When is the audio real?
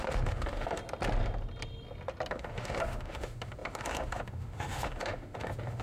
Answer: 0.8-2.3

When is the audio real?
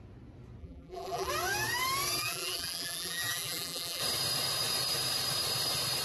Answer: 0.0-0.6; 1.3-2.2; 4.0-6.0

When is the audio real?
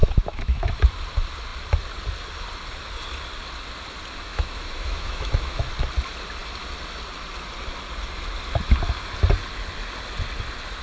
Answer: 0.7-4.3; 5.7-10.8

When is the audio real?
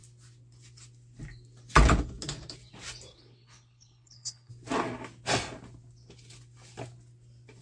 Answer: 0.0-3.1; 4.5-7.6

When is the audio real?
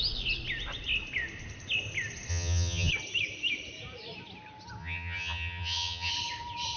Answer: 0.0-2.3; 2.9-4.8; 6.1-6.8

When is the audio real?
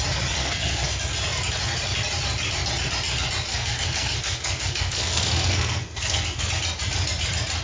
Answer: 0.0-0.4; 0.9-3.5; 6.5-7.6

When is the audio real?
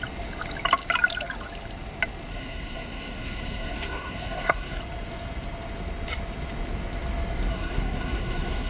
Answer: 0.0-2.3; 4.8-7.5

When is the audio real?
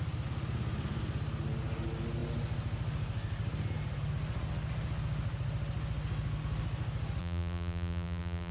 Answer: 0.0-7.2